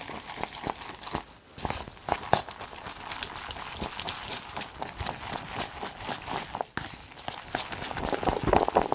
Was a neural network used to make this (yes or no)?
no